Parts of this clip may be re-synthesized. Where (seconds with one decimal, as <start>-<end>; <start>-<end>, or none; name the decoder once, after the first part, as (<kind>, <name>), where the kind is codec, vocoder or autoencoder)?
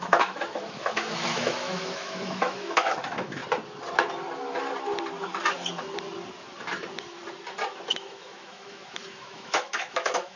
0.0-3.4 (autoencoder, DAC-VAE); 7.9-10.4